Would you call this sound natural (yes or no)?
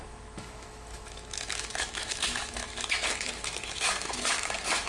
no